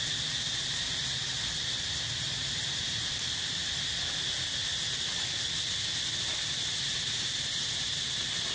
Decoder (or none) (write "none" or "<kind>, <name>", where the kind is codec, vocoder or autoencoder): none